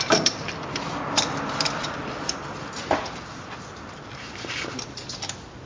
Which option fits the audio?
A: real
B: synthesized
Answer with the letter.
B